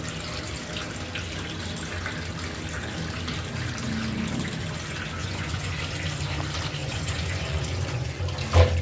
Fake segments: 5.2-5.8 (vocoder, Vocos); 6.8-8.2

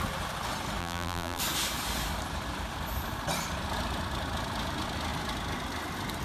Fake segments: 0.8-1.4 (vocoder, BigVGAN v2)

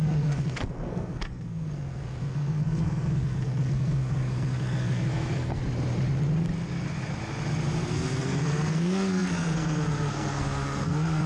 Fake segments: 0.0-5.6 (codec, SNAC); 7.9-11.3

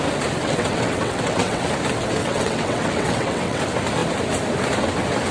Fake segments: 0.4-1.6 (vocoder, WaveNeXt); 2.2-3.6

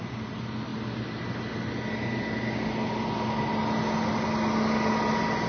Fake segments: none

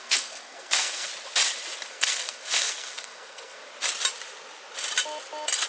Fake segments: 0.0-1.1 (codec, SNAC); 1.9-3.6